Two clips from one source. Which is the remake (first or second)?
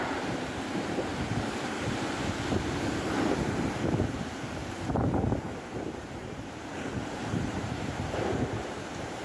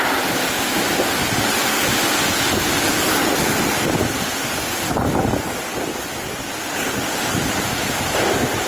first